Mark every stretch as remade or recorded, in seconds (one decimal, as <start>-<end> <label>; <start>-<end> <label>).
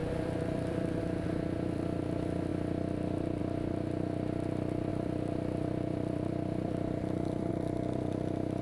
0.0-1.0 remade; 1.0-4.9 recorded; 4.9-7.5 remade; 7.5-8.6 recorded